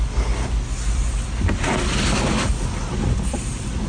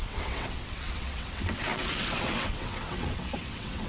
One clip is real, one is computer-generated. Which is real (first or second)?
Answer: first